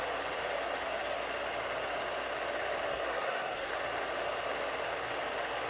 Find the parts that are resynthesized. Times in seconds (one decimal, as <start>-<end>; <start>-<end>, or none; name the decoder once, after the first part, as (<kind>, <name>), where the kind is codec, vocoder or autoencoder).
2.9-3.7 (codec, SNAC)